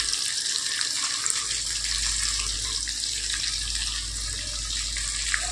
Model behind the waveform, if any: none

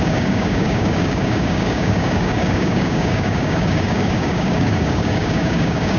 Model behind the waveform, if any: codec, DAC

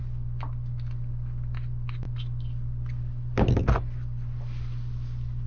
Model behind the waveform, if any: none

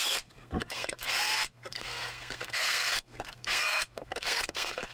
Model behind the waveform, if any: codec, SNAC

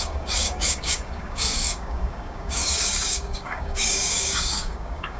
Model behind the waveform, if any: codec, DAC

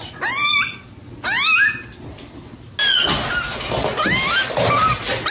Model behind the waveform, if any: none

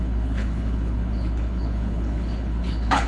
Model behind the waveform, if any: codec, HILCodec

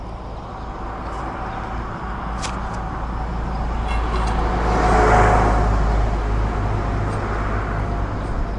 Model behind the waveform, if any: none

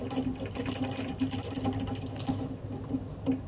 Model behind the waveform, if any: none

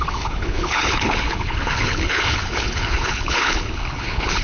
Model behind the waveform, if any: codec, HILCodec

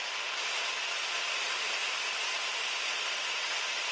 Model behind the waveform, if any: none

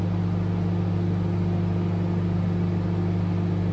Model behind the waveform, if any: none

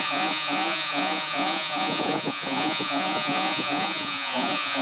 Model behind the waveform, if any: vocoder, Vocos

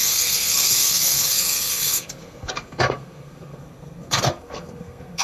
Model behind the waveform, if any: codec, SNAC